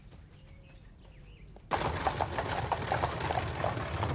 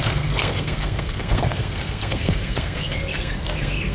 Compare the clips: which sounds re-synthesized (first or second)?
second